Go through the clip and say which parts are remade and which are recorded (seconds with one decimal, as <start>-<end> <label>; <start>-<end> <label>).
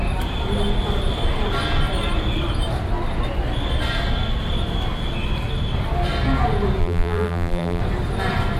0.0-6.8 recorded; 6.8-7.8 remade; 7.8-8.6 recorded